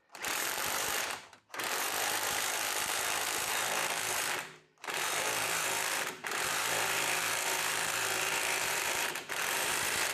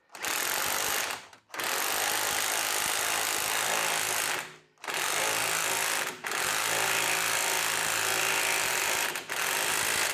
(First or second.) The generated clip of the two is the first